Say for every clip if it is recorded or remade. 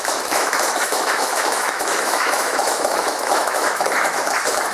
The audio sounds remade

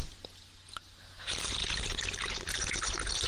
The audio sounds recorded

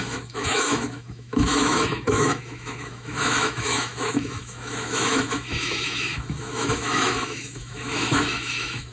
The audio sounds remade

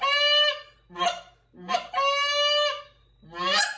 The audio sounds recorded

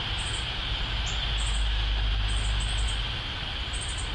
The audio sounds recorded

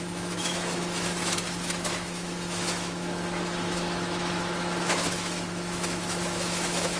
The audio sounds remade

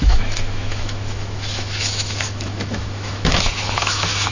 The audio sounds remade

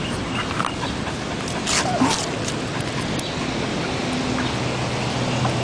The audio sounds recorded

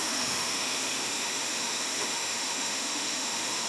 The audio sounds remade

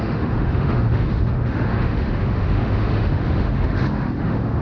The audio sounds remade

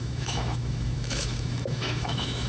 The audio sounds remade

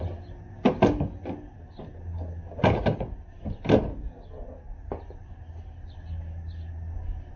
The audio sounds recorded